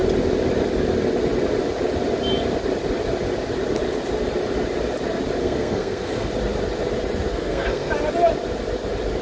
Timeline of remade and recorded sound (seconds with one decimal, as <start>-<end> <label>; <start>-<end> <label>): 0.0-5.4 recorded; 5.4-6.3 remade; 6.3-7.3 recorded; 7.3-7.9 remade; 7.9-9.2 recorded